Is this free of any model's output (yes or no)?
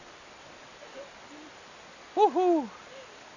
yes